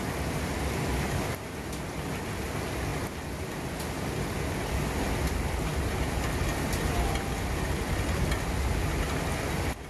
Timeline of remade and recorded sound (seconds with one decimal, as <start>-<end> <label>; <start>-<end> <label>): 0.0-9.9 recorded